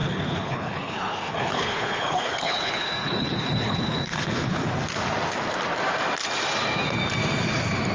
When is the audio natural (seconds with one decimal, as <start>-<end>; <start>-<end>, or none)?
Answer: 4.7-7.9